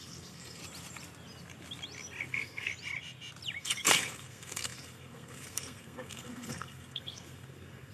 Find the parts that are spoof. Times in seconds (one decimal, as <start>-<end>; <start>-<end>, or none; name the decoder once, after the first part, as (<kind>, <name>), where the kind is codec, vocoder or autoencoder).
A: 0.0-0.6 (codec, SNAC); 2.3-2.7; 3.6-7.9